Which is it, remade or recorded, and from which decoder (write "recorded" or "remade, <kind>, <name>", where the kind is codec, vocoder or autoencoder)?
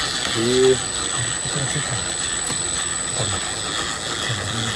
recorded